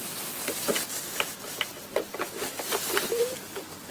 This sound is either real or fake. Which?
real